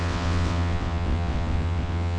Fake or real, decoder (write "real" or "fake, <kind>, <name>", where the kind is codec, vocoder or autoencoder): fake, vocoder, WaveNeXt